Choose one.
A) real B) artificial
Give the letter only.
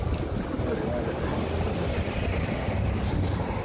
A